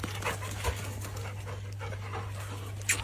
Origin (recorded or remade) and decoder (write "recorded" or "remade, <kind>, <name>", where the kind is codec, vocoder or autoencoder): recorded